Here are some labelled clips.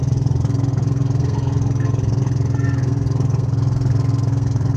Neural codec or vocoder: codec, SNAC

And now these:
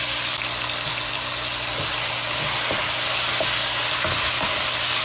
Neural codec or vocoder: none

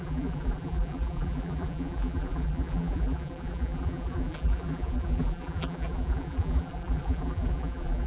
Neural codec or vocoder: vocoder, BigVGAN v2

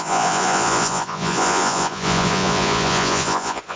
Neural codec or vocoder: vocoder, Vocos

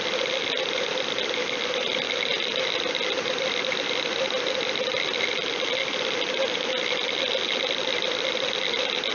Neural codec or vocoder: none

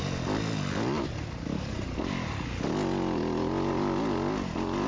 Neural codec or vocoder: none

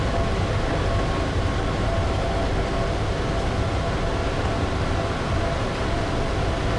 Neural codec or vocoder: none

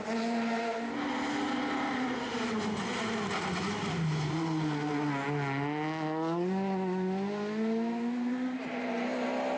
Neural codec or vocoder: none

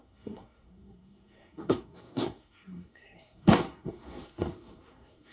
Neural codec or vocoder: codec, SNAC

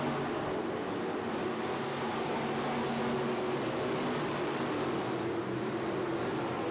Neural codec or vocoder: none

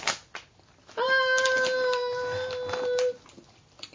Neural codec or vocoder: none